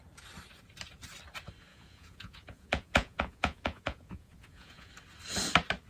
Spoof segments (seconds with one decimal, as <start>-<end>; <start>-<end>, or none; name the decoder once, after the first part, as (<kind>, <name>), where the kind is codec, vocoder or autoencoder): 1.7-4.9 (vocoder, Vocos)